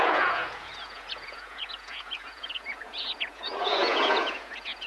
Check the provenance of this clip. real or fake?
fake